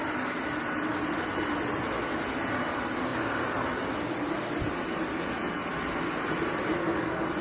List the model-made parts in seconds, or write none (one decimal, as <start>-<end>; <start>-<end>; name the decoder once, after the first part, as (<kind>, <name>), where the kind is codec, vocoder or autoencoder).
none